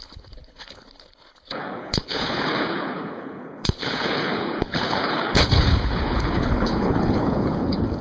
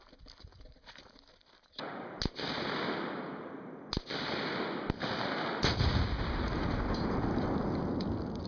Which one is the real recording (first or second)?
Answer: second